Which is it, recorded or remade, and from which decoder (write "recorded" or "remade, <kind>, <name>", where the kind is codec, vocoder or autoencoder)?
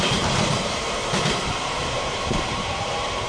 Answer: remade, vocoder, BigVGAN v2